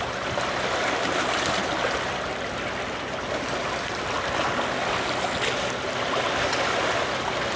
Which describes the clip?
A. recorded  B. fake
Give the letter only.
A